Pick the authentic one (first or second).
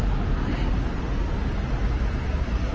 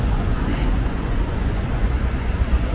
first